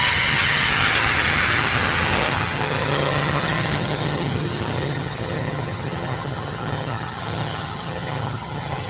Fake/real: fake